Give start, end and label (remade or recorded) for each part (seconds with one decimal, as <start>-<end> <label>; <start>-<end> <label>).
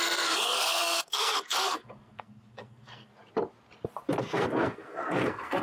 0.0-3.1 remade; 3.1-4.2 recorded; 4.2-5.6 remade